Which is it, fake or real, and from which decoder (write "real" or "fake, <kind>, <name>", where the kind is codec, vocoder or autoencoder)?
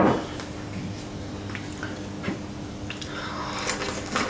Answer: real